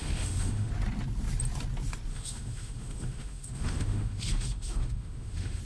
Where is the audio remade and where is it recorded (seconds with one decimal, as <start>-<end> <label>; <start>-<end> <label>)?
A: 0.0-0.7 remade; 0.7-2.1 recorded; 2.1-5.6 remade